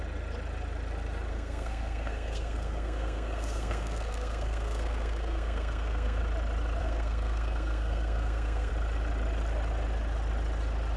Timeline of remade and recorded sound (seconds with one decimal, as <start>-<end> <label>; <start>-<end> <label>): 0.0-1.3 recorded; 1.3-6.2 remade; 6.2-6.8 recorded; 6.8-8.7 remade; 8.7-11.0 recorded